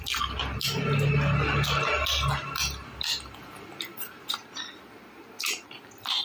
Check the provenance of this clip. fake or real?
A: real